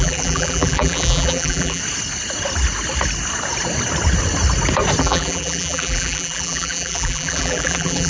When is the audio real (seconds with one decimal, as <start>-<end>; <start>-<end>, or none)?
1.8-5.0